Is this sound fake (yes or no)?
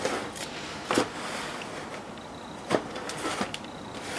no